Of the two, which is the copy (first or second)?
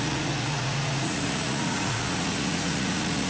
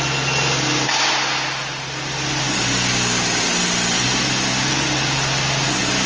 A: first